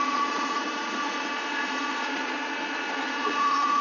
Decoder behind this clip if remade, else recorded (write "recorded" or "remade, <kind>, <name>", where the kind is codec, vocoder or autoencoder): remade, vocoder, Vocos